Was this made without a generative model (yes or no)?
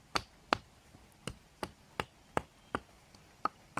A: yes